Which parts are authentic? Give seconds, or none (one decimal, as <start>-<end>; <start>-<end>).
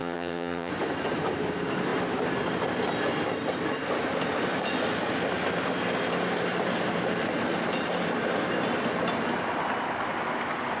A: 0.7-10.8